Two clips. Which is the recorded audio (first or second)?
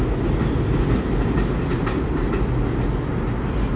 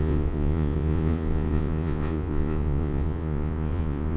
first